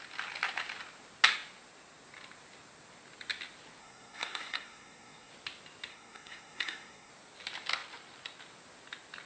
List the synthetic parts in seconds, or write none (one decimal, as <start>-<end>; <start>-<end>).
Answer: 3.8-5.3; 5.9-7.1